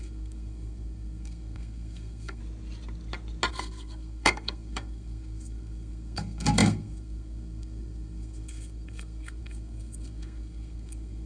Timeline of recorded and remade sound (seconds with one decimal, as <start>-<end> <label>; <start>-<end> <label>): 0.0-2.4 remade; 2.4-3.5 recorded; 3.5-11.3 remade